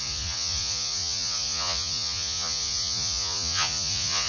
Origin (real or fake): fake